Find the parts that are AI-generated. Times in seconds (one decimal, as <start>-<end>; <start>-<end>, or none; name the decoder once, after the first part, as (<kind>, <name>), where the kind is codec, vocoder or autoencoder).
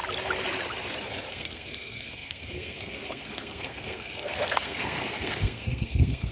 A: 1.3-6.3 (codec, SNAC)